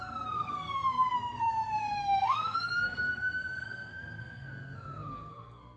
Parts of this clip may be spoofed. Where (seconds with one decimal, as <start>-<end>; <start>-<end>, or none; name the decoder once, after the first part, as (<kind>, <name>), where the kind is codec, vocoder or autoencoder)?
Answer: 0.0-5.8 (codec, SNAC)